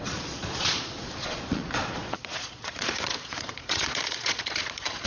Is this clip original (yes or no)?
no